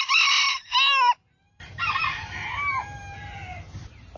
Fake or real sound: real